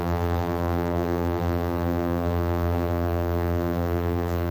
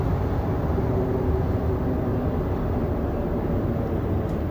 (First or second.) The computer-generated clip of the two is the first